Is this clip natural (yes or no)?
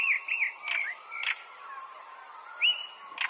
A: yes